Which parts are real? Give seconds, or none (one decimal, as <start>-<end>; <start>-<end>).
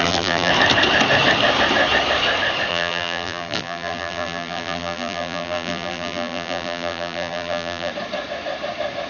0.5-2.7; 7.9-9.1